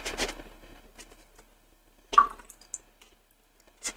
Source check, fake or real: real